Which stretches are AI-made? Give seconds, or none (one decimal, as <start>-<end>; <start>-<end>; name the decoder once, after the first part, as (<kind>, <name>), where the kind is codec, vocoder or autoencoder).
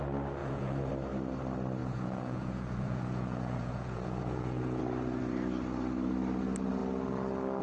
0.4-0.9 (vocoder, Vocos); 1.8-4.8